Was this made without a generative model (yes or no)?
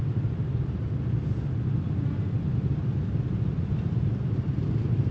yes